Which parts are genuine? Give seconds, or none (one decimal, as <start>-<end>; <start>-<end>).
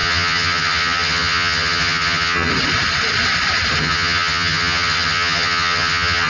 2.5-3.8